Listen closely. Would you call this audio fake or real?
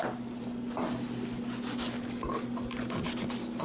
real